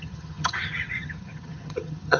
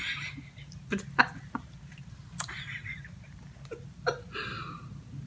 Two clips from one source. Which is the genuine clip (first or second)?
second